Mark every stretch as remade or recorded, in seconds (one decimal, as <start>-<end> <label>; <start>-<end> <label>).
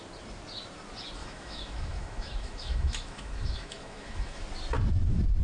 0.0-1.2 recorded; 1.2-4.4 remade; 4.4-5.4 recorded